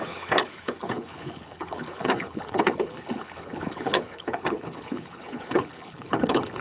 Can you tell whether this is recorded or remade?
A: remade